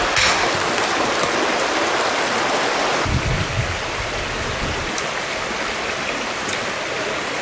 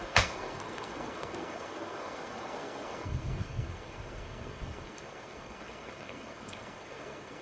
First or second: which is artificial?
second